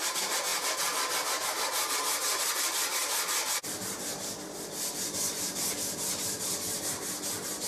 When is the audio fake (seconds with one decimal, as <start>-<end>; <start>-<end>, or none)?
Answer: 0.0-7.7